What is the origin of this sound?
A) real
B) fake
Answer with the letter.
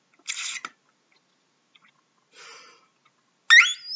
A